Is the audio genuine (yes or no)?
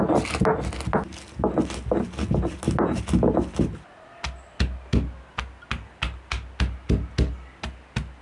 yes